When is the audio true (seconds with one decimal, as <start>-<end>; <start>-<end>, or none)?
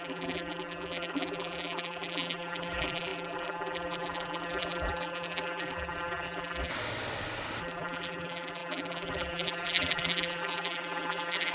6.7-7.6